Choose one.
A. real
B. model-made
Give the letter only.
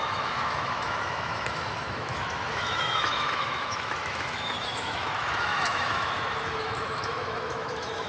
B